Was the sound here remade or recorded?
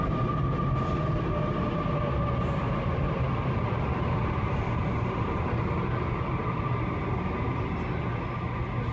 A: recorded